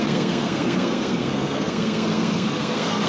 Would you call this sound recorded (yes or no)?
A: no